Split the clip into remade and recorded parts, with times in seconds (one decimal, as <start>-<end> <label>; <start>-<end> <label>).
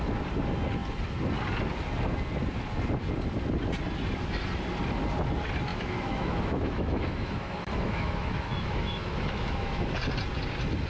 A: 0.0-5.7 recorded; 5.7-9.9 remade; 9.9-10.9 recorded